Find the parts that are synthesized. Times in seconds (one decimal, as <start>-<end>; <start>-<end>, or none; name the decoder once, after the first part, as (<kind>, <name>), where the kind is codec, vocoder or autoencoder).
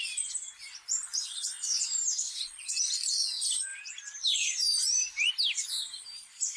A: 1.5-2.4 (vocoder, BigVGAN v2); 3.7-5.3